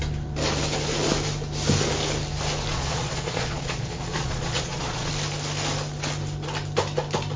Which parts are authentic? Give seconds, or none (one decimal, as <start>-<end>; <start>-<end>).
0.0-2.7; 5.1-7.4